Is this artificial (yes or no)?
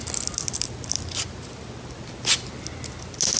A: no